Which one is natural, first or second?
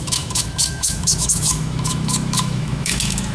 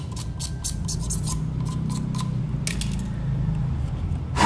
second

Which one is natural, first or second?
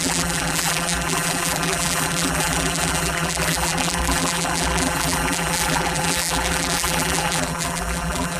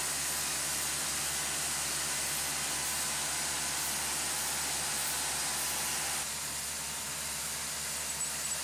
second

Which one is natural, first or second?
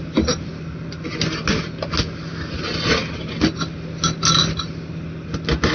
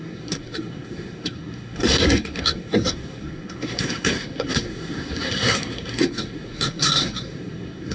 first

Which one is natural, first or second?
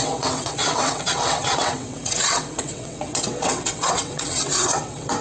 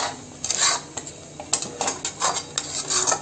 second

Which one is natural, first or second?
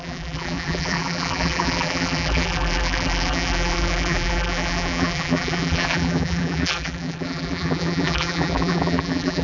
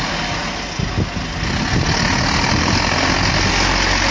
second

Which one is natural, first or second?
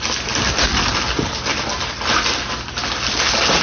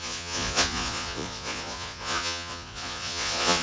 first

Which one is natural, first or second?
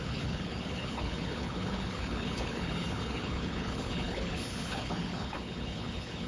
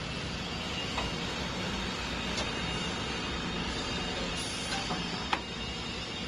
second